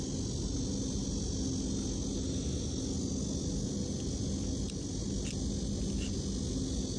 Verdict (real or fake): real